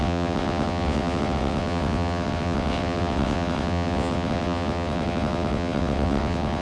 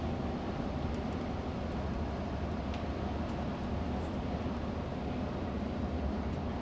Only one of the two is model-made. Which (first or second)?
first